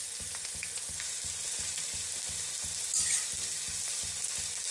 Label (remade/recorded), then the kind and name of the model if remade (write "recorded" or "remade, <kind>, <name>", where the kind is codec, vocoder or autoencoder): recorded